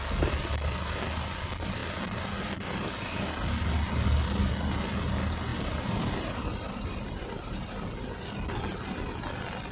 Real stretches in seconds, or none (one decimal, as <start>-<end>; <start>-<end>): 0.0-5.5; 7.7-9.7